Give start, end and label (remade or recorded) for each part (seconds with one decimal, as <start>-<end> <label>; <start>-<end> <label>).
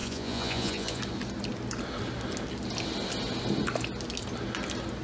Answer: 0.0-1.0 remade; 1.0-5.0 recorded